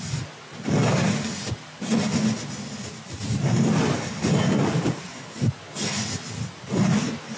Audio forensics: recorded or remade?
recorded